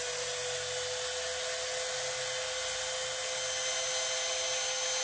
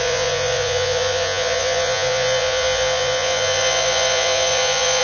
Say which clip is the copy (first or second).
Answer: second